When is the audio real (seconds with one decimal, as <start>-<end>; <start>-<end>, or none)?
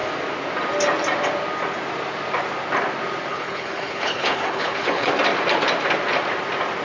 0.0-3.3; 5.1-6.8